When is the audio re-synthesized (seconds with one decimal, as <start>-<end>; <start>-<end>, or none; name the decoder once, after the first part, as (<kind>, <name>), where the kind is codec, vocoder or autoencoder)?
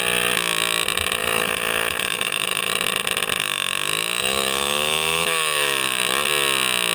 1.2-2.7 (autoencoder, DAC-VAE); 3.4-6.0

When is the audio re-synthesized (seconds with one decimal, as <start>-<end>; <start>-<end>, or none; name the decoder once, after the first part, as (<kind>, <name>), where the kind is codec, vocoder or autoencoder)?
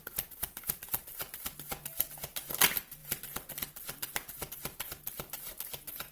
none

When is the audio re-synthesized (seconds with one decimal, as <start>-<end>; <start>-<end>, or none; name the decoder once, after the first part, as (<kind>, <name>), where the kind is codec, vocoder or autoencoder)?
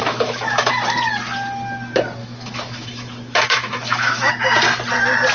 0.0-0.7 (autoencoder, DAC-VAE); 2.2-4.3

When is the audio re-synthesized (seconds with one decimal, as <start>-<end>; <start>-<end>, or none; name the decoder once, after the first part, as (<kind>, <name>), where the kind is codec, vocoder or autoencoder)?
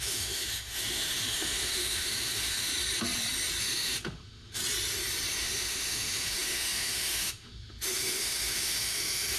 0.0-2.7 (autoencoder, DAC-VAE); 3.6-4.6; 5.4-9.4